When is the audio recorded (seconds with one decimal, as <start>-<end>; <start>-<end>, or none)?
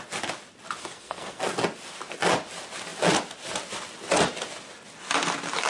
0.0-0.8; 1.4-5.7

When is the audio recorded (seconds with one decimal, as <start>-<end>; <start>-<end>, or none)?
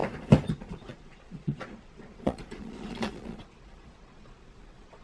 0.0-0.5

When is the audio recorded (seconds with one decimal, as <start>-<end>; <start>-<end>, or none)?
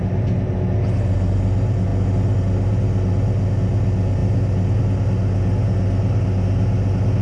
0.0-7.2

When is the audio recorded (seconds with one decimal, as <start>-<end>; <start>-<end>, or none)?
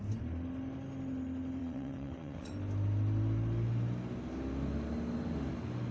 0.0-1.6; 2.5-5.9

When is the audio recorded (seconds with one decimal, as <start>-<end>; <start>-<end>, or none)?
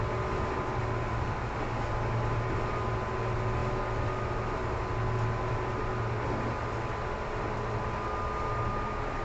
0.0-9.2